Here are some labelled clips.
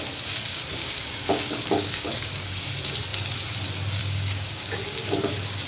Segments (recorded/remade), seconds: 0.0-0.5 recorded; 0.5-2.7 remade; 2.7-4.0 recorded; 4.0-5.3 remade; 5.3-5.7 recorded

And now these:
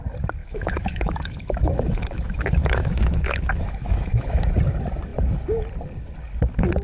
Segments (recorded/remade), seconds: 0.0-0.4 recorded; 0.4-4.5 remade; 4.5-6.8 recorded

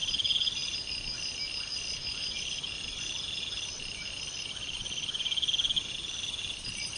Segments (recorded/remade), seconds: 0.0-7.0 recorded

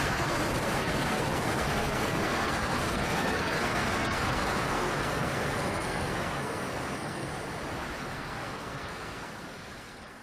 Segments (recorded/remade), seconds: 0.0-7.3 remade; 7.3-8.0 recorded; 8.0-10.2 remade

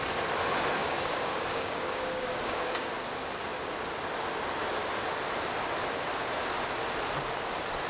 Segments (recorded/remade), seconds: 0.0-0.8 recorded; 0.8-2.9 remade; 2.9-7.9 recorded